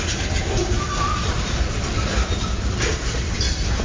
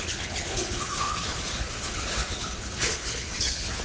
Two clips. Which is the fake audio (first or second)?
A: second